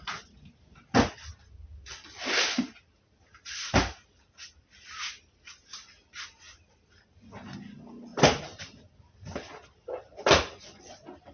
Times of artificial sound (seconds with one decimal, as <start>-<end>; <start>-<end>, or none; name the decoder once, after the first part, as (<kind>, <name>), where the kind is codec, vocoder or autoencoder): none